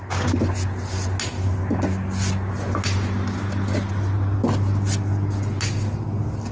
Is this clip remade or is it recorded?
recorded